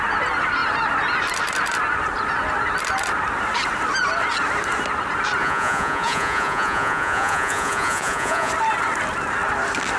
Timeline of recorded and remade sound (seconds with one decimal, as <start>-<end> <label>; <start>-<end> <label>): 0.0-5.4 recorded; 5.4-8.5 remade; 8.5-10.0 recorded